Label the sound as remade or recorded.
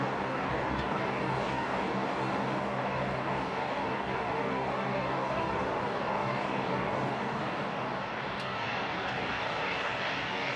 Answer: remade